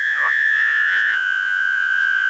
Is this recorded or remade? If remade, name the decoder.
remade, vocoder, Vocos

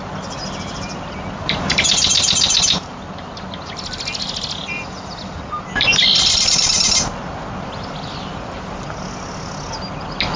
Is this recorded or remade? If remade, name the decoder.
recorded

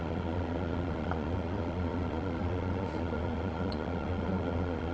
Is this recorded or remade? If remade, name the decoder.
remade, vocoder, Vocos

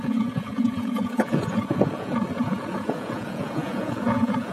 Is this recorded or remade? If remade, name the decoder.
remade, vocoder, Vocos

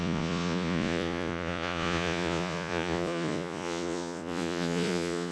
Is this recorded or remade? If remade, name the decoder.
remade, vocoder, Vocos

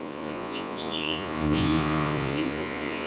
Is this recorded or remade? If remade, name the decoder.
remade, vocoder, Vocos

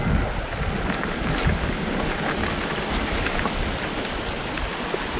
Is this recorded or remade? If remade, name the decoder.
recorded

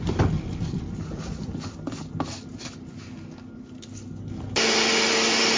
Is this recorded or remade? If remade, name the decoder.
recorded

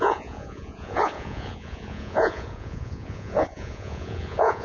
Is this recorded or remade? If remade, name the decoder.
remade, vocoder, Vocos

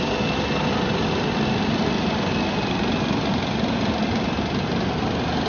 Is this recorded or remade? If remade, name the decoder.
recorded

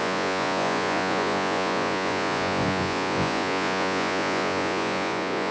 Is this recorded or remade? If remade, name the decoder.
remade, vocoder, Vocos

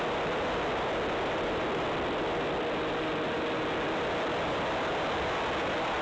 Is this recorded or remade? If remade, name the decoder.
recorded